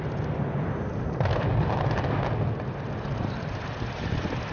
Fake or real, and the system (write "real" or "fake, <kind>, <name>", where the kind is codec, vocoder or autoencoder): real